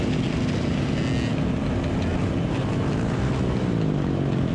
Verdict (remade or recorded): recorded